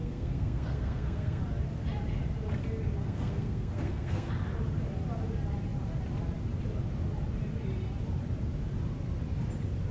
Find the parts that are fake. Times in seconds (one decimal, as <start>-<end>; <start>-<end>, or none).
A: 0.0-1.4; 3.0-4.3